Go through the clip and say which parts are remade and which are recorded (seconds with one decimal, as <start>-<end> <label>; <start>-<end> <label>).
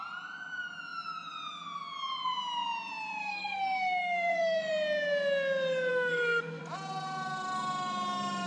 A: 0.0-3.2 recorded; 3.2-4.7 remade; 4.7-5.9 recorded; 5.9-6.6 remade; 6.6-8.5 recorded